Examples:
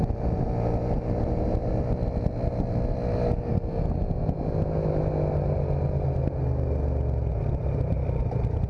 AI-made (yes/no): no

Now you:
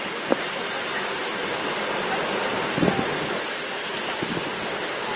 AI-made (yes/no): no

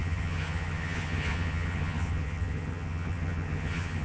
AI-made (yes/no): yes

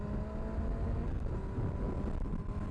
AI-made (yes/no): no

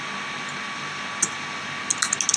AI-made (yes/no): no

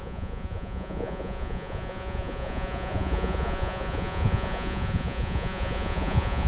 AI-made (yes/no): yes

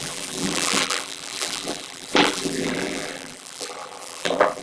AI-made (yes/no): yes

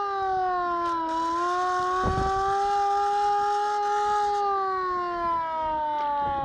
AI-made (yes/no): no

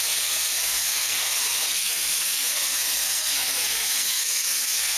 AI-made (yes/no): yes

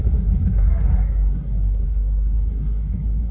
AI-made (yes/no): yes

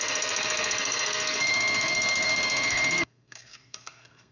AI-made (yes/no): yes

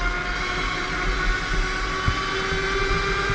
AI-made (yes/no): no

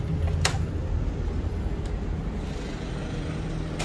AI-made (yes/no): no